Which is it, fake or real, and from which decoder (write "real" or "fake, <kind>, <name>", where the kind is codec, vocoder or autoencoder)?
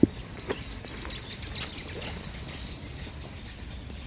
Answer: real